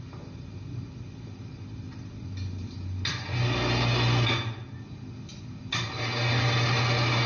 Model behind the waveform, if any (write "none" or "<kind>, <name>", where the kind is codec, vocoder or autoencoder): none